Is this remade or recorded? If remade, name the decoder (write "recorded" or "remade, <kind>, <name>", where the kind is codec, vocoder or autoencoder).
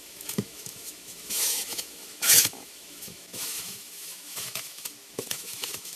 remade, autoencoder, DAC-VAE